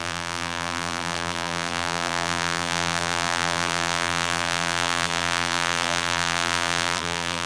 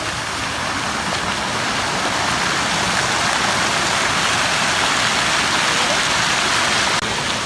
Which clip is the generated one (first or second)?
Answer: first